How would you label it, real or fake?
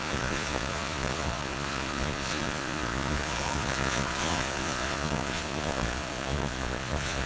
fake